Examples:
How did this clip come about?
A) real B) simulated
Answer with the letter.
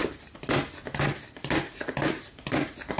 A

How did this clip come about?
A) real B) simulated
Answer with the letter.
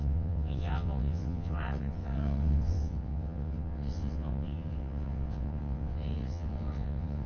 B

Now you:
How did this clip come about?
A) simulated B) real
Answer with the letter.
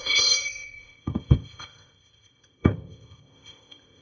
A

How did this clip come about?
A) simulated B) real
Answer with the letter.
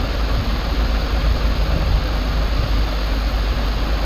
B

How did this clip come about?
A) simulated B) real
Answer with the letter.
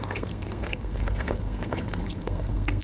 A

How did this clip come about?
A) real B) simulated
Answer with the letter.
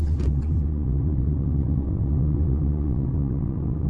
B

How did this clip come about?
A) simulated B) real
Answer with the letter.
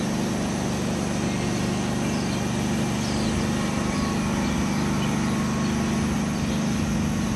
B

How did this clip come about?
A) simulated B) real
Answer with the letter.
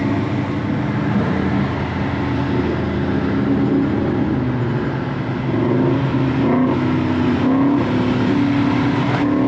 B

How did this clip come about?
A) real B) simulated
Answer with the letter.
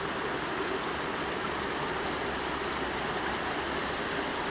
A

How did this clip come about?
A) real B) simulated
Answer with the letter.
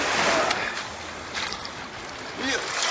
A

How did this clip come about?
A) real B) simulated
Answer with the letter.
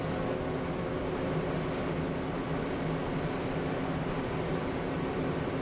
A